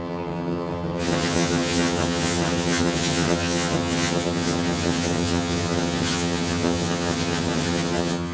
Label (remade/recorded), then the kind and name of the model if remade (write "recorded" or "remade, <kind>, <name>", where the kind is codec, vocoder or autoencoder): remade, vocoder, HiFi-GAN